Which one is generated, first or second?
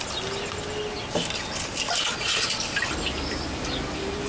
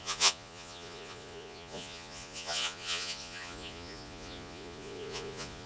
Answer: second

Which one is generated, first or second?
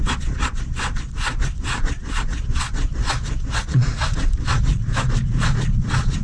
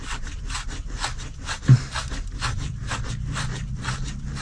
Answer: first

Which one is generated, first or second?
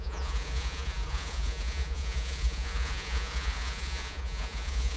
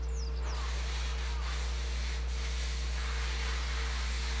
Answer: first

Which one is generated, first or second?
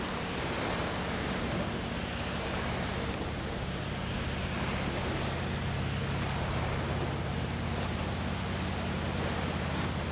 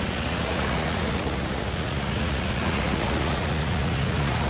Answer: second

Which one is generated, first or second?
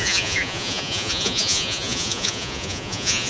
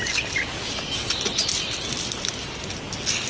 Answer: first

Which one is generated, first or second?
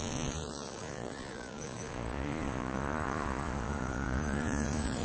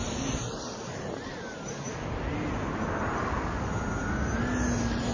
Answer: first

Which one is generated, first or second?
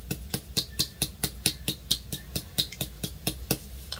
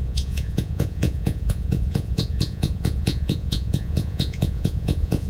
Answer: second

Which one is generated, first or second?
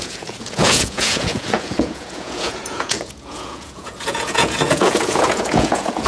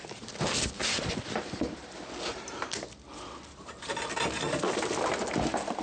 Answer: first